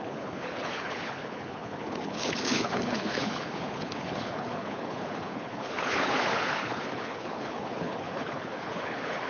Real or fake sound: fake